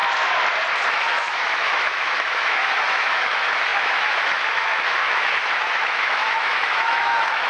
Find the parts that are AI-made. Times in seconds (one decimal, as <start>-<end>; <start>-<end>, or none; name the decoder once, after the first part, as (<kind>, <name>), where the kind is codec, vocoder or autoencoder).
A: 0.9-7.5 (autoencoder, DAC-VAE)